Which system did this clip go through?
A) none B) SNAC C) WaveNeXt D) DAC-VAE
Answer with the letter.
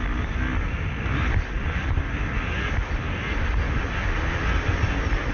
A